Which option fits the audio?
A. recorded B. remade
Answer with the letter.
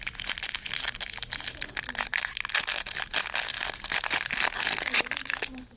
A